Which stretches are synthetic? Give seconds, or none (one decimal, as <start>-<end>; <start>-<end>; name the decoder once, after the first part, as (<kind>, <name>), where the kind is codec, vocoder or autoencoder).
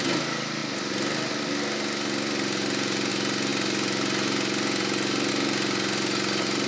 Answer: none